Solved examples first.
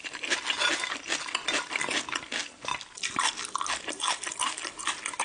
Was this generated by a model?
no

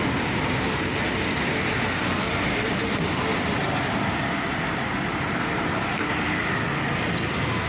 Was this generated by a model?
no